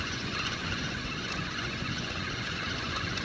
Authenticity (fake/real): fake